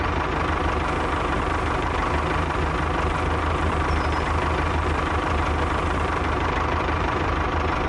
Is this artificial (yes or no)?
yes